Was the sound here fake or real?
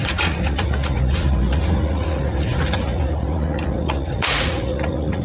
fake